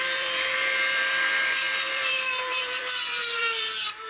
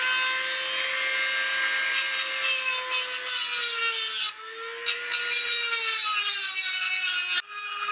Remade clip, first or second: first